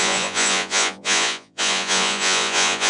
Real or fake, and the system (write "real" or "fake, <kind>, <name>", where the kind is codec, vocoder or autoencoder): fake, vocoder, Vocos